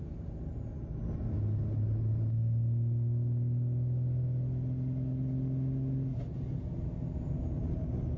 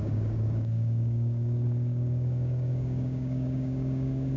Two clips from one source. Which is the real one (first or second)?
first